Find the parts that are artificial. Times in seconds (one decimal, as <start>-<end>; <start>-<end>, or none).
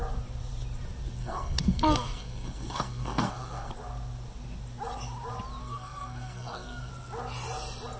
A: 1.2-3.7; 5.6-6.9